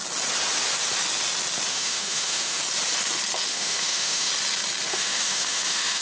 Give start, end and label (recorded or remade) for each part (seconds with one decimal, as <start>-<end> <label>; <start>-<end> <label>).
0.0-1.7 recorded; 1.7-2.6 remade; 2.6-3.5 recorded; 3.5-4.3 remade; 4.3-4.9 recorded; 4.9-6.0 remade